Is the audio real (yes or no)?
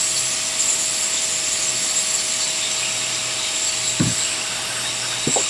yes